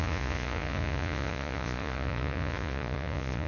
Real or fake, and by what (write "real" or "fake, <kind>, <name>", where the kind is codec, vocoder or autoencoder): fake, vocoder, Vocos